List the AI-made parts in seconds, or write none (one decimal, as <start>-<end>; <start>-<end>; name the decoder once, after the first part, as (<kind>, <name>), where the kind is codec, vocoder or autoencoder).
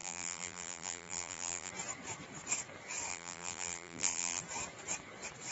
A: 0.0-1.7 (vocoder, BigVGAN v2); 3.1-4.4